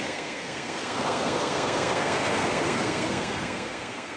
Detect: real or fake fake